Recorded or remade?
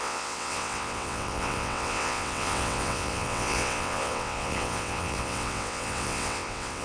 remade